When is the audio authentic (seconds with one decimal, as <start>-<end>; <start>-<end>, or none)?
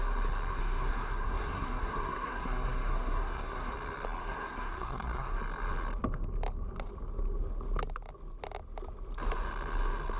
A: 0.0-0.6; 3.7-4.2; 5.4-10.2